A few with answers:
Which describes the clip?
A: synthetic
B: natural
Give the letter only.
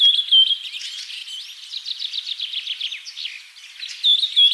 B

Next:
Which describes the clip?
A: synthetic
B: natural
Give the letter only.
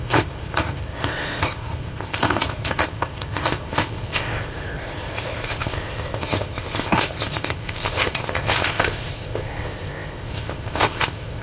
A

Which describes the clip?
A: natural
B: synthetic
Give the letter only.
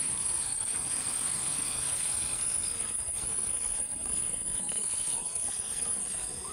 B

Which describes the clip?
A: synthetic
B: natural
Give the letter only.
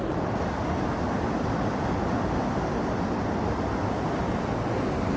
B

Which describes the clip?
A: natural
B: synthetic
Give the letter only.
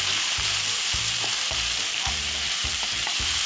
B